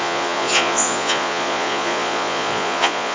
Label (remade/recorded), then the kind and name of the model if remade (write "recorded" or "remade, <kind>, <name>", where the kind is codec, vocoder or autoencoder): remade, vocoder, Vocos